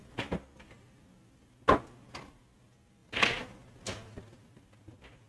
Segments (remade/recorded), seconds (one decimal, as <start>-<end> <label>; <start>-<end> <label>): 0.0-5.3 recorded